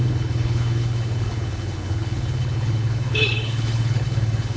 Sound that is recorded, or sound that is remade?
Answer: remade